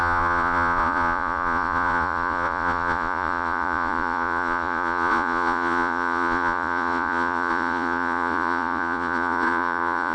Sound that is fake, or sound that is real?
fake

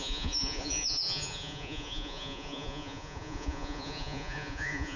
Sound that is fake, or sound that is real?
fake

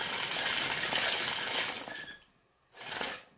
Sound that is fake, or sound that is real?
real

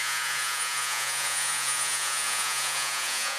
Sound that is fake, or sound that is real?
fake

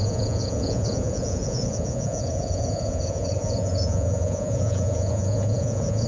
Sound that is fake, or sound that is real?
fake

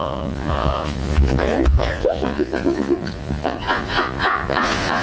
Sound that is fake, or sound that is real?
fake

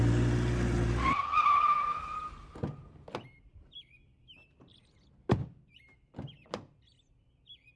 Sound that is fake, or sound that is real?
real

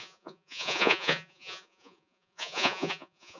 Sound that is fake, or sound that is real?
fake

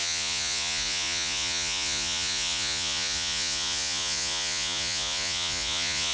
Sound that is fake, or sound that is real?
fake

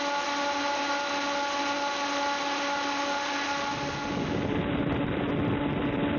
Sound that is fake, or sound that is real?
real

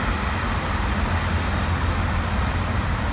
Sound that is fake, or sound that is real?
real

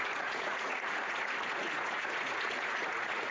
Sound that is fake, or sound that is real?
fake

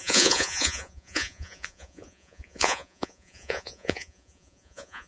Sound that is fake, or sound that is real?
fake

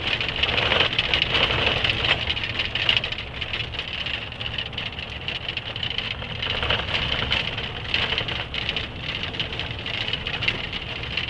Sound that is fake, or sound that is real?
real